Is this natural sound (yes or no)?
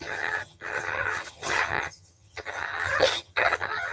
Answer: no